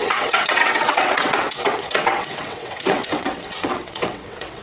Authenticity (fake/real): fake